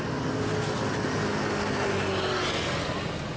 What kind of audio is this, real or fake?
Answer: real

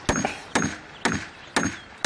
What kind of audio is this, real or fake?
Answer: real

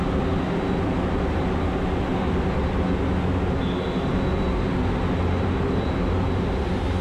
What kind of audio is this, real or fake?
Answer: real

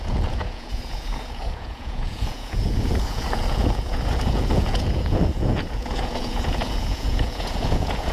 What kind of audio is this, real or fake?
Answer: fake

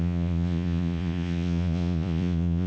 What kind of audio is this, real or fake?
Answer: fake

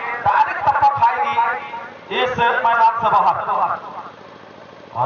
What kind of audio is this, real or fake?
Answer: real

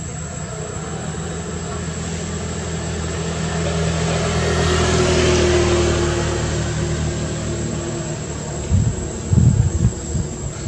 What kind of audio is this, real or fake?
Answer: real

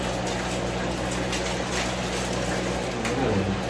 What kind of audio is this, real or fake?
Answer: real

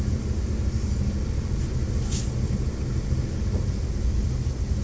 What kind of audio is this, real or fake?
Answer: real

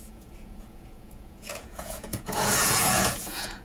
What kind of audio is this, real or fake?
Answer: fake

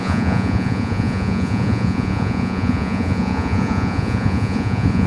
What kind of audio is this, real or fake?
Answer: fake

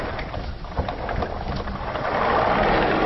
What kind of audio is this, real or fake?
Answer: real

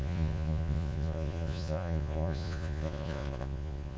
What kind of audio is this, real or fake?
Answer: fake